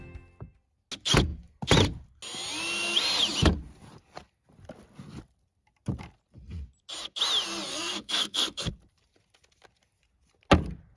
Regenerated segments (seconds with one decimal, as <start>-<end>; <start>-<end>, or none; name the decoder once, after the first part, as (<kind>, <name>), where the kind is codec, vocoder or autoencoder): 7.7-8.7 (codec, SNAC)